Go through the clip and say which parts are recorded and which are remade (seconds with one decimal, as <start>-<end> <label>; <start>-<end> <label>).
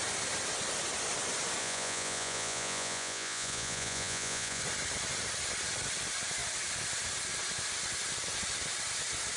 0.0-1.6 recorded; 1.6-4.6 remade; 4.6-9.4 recorded